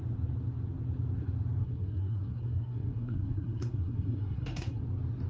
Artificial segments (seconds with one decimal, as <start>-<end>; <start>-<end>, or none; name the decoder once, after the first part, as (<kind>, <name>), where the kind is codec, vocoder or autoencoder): 1.6-4.8 (codec, SNAC)